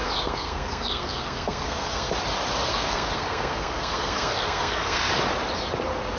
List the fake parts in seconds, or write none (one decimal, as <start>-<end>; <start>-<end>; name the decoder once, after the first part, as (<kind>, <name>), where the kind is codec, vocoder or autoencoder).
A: 0.0-2.1 (codec, SNAC); 2.7-5.1